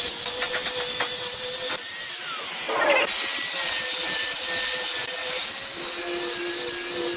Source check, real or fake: real